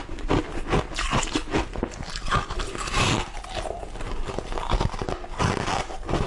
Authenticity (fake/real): real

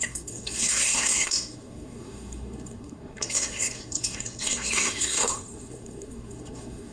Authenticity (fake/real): fake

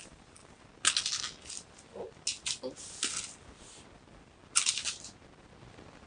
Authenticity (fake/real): real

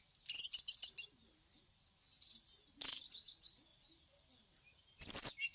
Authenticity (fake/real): real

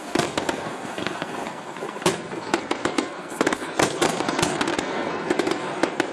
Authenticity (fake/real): fake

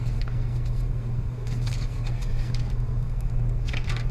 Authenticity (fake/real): fake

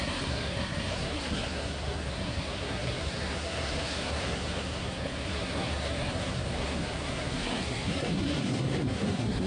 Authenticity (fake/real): fake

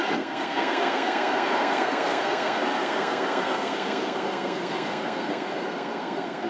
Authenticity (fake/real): fake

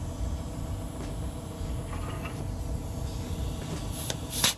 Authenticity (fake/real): real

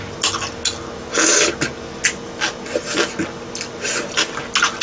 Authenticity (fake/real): real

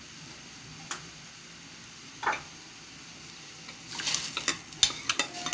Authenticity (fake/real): real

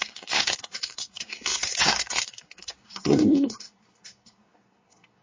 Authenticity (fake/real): fake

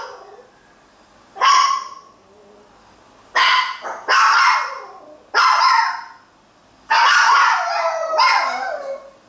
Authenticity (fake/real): real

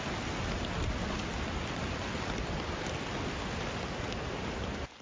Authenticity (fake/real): real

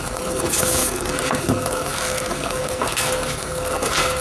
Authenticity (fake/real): fake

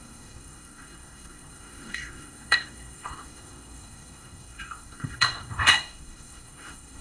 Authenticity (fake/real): fake